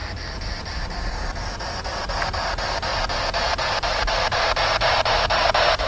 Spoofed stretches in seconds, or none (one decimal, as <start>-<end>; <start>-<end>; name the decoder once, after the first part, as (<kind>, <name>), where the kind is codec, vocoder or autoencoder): none

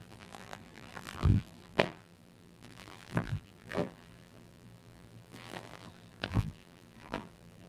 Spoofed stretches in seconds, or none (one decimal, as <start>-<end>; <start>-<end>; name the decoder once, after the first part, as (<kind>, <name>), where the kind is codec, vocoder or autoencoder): 0.0-7.7 (vocoder, BigVGAN v2)

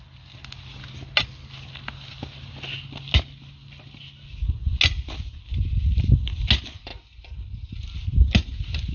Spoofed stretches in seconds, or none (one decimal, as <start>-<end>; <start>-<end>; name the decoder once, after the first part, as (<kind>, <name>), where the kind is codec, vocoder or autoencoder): none

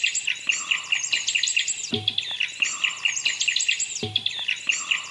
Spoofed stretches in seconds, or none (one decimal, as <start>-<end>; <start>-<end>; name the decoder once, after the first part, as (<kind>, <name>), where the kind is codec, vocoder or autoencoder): none